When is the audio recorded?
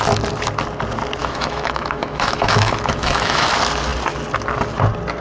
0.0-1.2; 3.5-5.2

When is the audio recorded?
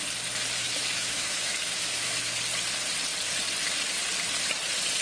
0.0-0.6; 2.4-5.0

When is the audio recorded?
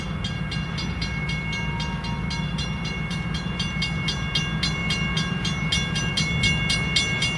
0.0-7.4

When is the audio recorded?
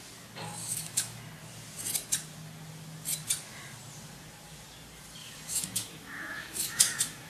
0.0-0.6; 1.2-5.2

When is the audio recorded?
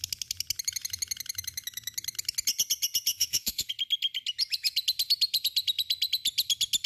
0.0-3.1; 3.7-6.9